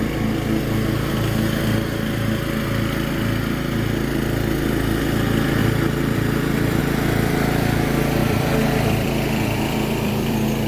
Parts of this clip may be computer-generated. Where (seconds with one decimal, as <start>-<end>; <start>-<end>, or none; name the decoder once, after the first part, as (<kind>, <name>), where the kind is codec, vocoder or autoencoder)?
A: 5.6-6.8 (vocoder, BigVGAN v2); 8.2-10.7